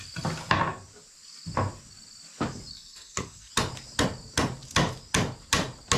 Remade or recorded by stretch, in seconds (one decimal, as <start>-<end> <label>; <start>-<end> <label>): 0.0-2.7 recorded; 2.7-3.5 remade; 3.5-6.0 recorded